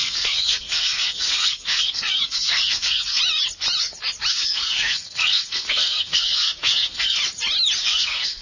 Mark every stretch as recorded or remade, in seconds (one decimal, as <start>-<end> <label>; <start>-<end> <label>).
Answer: 0.0-3.2 remade; 3.2-4.3 recorded; 4.3-7.2 remade; 7.2-7.8 recorded; 7.8-8.4 remade